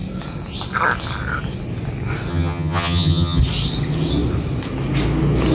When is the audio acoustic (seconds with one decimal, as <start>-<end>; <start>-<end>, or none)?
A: 0.0-2.3; 3.4-5.5